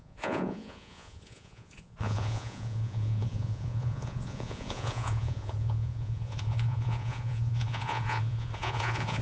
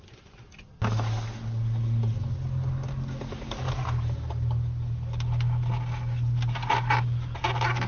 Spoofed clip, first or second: first